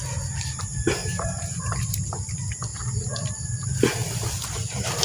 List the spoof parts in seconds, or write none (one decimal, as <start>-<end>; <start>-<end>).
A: 1.0-1.6; 4.0-5.0